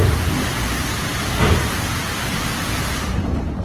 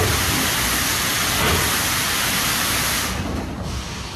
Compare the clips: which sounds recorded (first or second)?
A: first